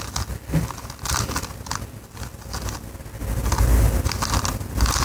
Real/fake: real